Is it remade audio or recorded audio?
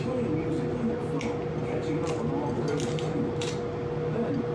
recorded